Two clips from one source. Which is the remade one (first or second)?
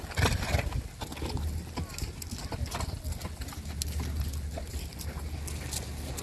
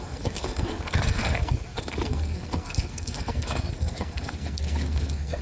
second